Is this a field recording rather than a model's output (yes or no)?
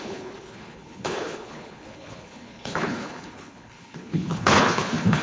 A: no